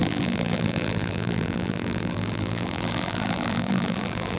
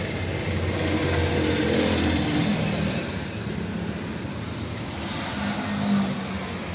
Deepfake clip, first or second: first